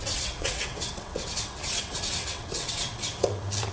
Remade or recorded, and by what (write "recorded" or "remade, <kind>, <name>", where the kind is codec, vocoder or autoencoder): remade, vocoder, WaveNeXt